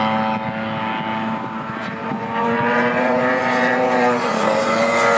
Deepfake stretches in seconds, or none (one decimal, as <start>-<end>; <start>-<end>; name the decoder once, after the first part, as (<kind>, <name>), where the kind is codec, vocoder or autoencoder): 2.0-5.2 (vocoder, Vocos)